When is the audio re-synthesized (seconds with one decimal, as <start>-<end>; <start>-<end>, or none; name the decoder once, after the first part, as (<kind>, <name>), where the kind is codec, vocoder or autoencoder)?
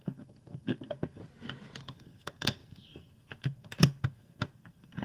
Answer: 0.0-1.2 (codec, SNAC); 1.8-5.0